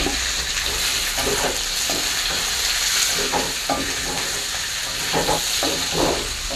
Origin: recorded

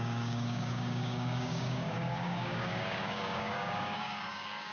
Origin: remade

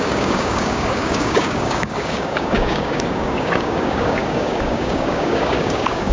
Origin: remade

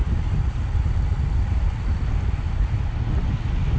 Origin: recorded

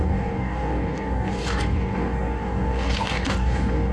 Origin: remade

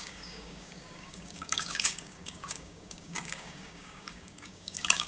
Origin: remade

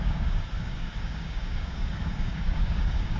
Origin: remade